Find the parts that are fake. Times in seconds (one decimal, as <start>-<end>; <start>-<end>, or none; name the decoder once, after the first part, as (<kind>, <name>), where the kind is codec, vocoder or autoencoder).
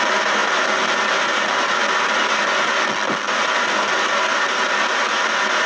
none